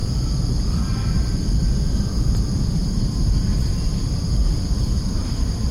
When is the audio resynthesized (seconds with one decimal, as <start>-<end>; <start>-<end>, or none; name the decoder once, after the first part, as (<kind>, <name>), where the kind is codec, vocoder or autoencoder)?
2.4-5.7 (vocoder, BigVGAN v2)